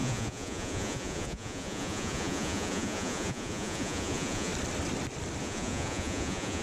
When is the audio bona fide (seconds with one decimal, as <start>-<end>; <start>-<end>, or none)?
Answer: 4.5-5.4